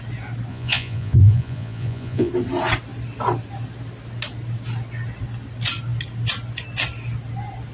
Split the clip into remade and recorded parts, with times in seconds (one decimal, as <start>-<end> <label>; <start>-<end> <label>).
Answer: 0.0-0.5 recorded; 0.5-2.3 remade; 2.3-7.7 recorded